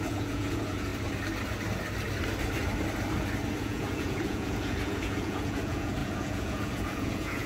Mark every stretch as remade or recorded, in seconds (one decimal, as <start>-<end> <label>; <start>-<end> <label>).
0.0-0.9 remade; 0.9-3.6 recorded; 3.6-7.5 remade